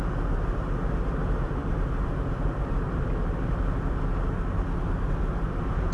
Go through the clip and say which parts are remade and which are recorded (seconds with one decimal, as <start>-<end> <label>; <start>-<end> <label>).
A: 0.0-5.9 recorded